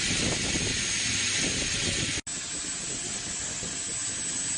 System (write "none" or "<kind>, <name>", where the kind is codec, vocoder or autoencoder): none